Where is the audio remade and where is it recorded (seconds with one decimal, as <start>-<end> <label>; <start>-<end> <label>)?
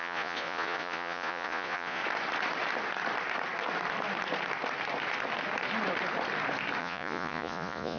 0.0-2.0 remade; 2.0-6.8 recorded; 6.8-8.0 remade